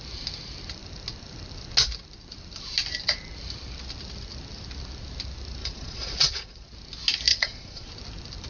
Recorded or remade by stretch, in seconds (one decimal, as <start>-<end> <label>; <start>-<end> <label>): 0.0-5.6 recorded; 5.6-6.7 remade; 6.7-7.3 recorded; 7.3-7.9 remade; 7.9-8.5 recorded